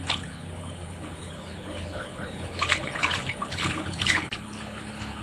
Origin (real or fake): fake